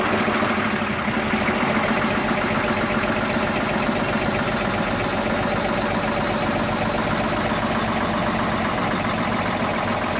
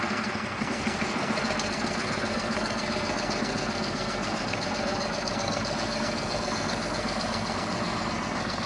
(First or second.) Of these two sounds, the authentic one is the first